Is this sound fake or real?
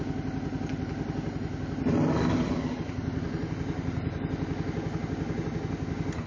real